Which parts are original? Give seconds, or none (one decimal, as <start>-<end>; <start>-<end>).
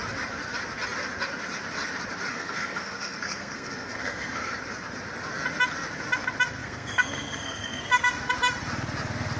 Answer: 0.0-2.3; 4.5-6.6; 8.1-9.4